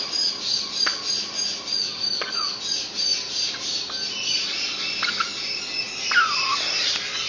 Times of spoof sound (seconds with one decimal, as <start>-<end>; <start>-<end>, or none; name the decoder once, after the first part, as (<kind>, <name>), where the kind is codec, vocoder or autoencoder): none